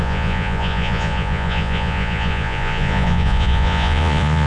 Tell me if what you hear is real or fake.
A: fake